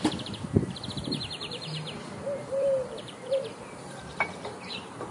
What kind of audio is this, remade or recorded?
remade